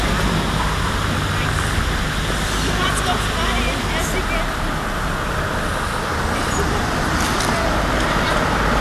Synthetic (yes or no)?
no